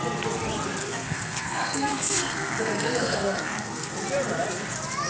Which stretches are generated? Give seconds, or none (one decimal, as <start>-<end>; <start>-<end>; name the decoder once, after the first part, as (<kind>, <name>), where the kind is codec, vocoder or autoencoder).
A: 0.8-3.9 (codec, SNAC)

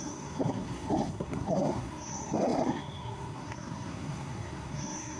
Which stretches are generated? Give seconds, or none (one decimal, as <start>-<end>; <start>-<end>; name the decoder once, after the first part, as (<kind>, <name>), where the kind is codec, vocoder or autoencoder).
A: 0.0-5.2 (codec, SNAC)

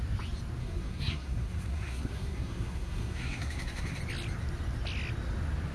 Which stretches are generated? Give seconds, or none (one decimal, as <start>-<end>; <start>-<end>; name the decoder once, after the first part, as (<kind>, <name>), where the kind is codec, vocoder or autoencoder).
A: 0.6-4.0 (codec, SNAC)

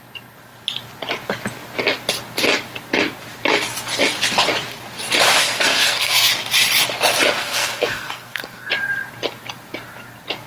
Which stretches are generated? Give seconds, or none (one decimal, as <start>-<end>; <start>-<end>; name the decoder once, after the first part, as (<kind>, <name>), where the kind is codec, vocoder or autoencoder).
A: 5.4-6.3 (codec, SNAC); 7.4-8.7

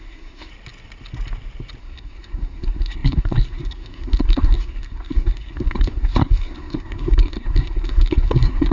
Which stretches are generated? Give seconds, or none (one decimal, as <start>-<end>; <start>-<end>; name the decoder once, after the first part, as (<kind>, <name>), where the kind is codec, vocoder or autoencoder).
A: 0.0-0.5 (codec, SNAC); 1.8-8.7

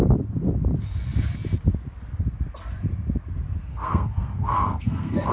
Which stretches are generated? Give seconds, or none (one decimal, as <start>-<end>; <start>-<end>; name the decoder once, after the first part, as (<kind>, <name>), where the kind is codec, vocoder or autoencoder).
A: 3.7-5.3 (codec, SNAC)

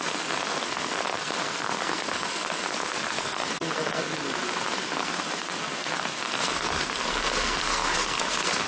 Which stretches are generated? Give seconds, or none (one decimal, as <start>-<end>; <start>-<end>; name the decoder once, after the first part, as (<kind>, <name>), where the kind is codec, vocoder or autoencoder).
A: 0.0-8.7 (codec, SNAC)

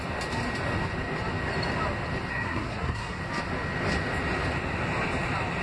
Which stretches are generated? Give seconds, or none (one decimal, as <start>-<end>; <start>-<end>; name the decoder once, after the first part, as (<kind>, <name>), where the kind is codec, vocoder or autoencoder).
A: 2.3-3.2 (codec, SNAC)